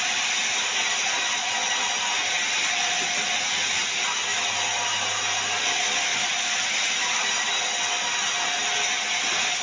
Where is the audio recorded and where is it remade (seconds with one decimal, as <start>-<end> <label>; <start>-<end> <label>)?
0.0-9.6 recorded